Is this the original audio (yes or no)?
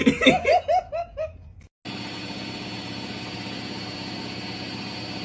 yes